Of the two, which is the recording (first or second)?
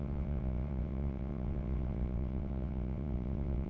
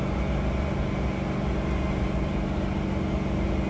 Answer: second